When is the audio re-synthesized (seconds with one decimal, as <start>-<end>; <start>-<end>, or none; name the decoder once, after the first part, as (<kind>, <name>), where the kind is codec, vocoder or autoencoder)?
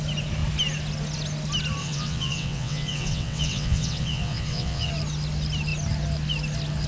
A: 1.8-4.9 (vocoder, WaveNeXt)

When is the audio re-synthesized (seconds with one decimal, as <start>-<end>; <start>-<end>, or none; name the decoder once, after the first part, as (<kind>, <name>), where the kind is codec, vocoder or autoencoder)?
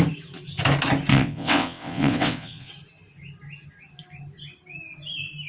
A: 1.1-2.7 (vocoder, WaveNeXt)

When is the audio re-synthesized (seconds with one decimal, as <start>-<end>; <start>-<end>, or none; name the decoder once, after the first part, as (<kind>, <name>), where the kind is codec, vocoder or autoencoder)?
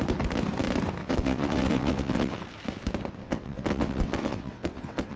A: 1.0-2.4 (vocoder, WaveNeXt); 3.2-5.2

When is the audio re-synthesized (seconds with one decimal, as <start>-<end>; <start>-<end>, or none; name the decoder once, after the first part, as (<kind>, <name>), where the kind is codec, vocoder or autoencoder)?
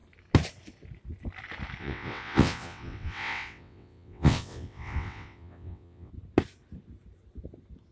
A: 1.8-6.1 (vocoder, WaveNeXt)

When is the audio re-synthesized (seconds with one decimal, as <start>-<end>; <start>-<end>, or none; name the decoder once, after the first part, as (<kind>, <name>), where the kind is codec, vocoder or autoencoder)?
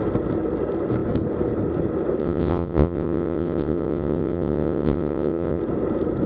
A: 2.2-5.6 (vocoder, WaveNeXt)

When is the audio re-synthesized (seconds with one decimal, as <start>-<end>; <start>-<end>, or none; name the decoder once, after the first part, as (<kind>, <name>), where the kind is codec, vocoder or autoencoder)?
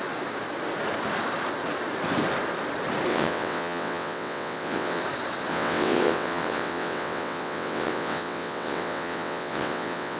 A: 3.1-5.0 (vocoder, WaveNeXt); 5.5-10.2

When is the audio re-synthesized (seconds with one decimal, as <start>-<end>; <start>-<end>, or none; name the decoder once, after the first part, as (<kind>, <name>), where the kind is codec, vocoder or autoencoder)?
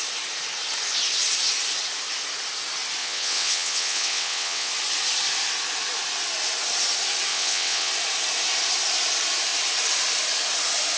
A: 3.0-4.7 (vocoder, WaveNeXt); 7.3-7.9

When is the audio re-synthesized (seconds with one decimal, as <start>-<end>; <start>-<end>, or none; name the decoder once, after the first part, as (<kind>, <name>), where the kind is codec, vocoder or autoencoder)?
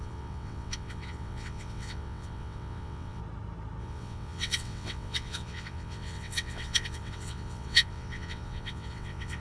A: 0.0-3.2 (vocoder, WaveNeXt); 3.8-9.4